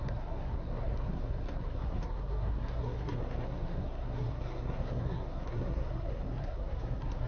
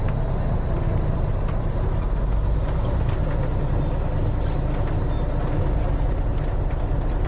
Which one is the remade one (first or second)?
first